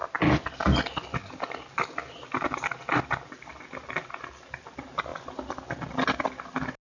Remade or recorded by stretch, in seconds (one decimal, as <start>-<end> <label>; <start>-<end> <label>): 0.0-6.9 recorded